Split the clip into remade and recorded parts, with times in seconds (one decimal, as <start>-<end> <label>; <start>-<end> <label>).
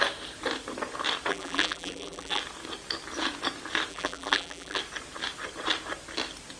0.0-1.3 recorded; 1.3-2.4 remade; 2.4-3.9 recorded; 3.9-4.8 remade; 4.8-6.6 recorded